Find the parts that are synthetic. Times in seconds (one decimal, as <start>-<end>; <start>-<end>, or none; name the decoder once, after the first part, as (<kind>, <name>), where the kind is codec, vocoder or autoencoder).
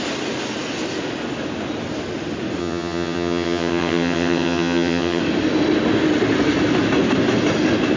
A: 2.6-5.2 (vocoder, HiFi-GAN)